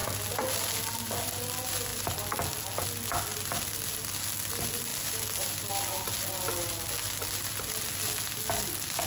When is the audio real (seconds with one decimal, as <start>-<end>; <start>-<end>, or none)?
0.0-9.1